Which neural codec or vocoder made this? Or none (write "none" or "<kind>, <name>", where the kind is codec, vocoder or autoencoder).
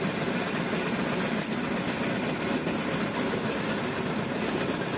none